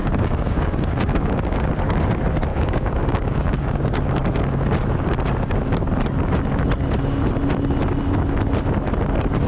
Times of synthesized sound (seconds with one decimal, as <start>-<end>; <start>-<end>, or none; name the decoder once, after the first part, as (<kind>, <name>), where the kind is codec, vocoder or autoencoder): 0.0-1.7 (codec, DAC); 2.5-3.7